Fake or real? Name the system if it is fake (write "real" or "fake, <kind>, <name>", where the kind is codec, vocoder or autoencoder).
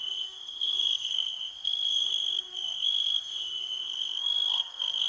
fake, codec, SNAC